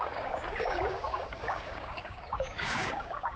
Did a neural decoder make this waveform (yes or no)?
yes